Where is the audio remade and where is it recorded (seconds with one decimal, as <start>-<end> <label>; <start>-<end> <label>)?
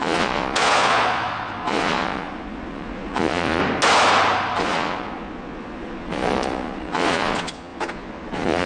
0.0-3.6 remade; 3.6-4.6 recorded; 4.6-8.7 remade